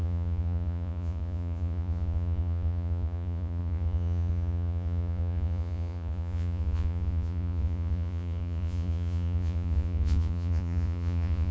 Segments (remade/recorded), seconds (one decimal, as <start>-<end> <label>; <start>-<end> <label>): 0.0-11.5 remade